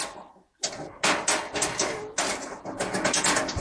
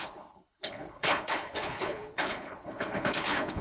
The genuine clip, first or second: first